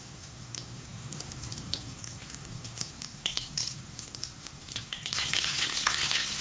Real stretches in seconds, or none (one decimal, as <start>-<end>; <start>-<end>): none